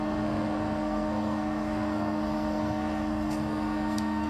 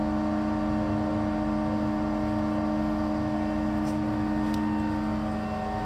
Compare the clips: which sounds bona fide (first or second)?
second